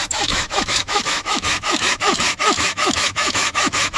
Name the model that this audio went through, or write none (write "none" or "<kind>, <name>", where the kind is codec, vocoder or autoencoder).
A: autoencoder, DAC-VAE